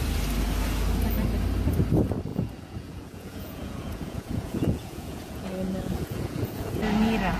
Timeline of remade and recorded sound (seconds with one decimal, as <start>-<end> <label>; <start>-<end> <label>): 0.0-2.3 recorded; 2.3-6.7 remade; 6.7-7.4 recorded